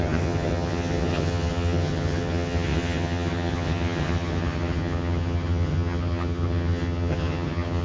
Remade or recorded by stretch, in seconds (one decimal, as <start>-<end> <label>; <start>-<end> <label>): 0.0-7.8 remade